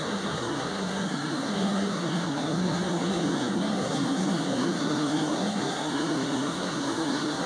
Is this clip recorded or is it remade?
remade